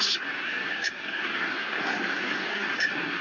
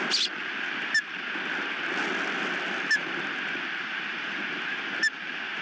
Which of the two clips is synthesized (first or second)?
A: first